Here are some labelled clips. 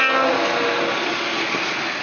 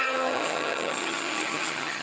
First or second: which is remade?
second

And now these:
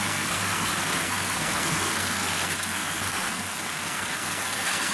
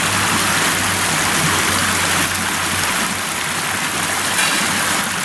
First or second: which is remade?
first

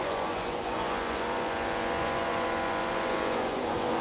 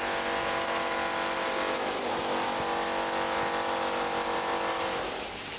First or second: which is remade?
first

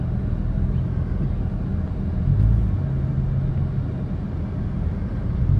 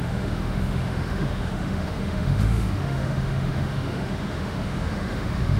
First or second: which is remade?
second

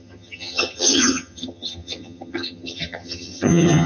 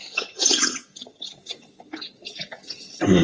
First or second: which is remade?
first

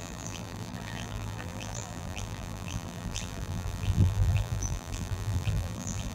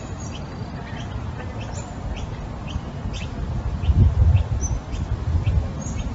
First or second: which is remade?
first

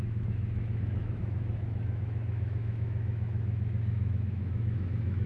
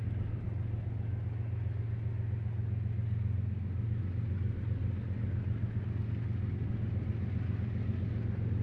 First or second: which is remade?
first